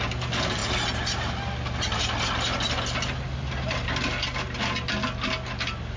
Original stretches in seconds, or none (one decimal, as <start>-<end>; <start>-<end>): 0.0-6.0